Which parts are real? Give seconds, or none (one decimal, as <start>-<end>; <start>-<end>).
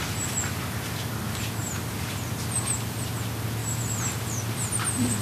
0.0-1.6; 2.4-3.6